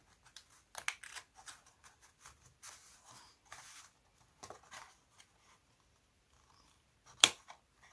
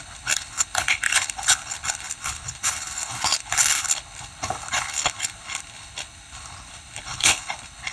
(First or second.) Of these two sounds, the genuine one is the first